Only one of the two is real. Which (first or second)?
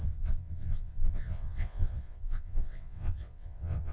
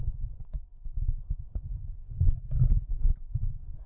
second